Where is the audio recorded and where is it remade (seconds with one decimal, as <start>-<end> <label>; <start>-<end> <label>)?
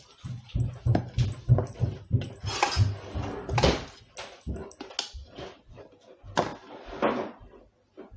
0.0-8.2 recorded